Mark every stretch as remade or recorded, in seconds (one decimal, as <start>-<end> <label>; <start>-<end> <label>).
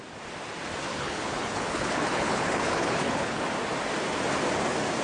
0.0-0.9 recorded; 0.9-3.4 remade; 3.4-5.0 recorded